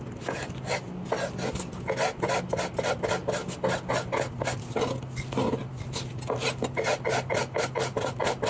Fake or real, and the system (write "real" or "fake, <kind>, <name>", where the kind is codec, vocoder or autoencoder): real